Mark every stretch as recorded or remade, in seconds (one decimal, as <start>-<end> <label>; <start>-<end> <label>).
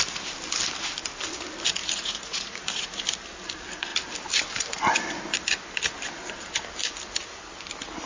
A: 0.0-1.8 recorded; 1.8-3.0 remade; 3.0-8.1 recorded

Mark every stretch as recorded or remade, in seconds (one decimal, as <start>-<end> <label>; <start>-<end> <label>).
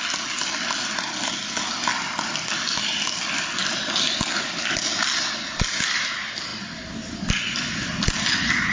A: 0.0-8.7 recorded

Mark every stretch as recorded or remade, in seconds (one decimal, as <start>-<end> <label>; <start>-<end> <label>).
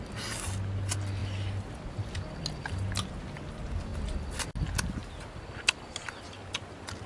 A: 0.0-7.1 recorded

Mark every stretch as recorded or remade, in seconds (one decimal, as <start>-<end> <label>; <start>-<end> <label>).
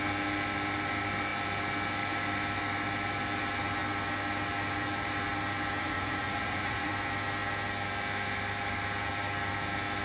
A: 0.0-5.8 recorded; 5.8-6.9 remade; 6.9-10.0 recorded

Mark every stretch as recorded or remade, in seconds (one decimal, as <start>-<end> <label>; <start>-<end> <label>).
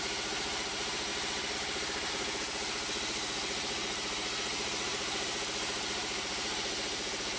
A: 0.0-1.1 remade; 1.1-2.1 recorded; 2.1-7.4 remade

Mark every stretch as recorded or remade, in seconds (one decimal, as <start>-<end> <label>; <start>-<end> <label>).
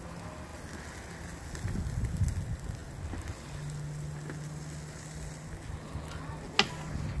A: 0.0-7.2 recorded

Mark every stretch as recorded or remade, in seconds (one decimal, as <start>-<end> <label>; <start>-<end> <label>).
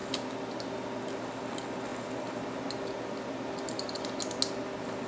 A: 0.0-5.1 recorded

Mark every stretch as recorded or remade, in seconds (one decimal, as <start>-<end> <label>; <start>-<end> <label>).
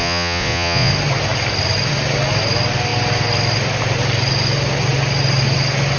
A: 0.0-0.9 remade; 0.9-6.0 recorded